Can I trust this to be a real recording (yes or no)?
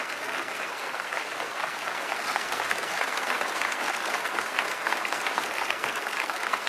no